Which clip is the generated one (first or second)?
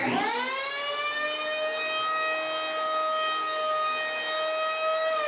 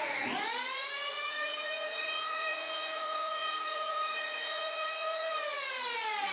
second